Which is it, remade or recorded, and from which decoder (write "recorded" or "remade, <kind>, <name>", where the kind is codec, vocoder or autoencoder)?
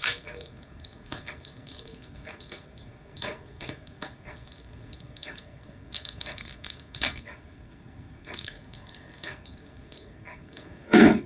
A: remade, codec, SNAC